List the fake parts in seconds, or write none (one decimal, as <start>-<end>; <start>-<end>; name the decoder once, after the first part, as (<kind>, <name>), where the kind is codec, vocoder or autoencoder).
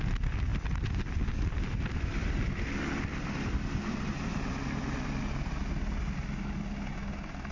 none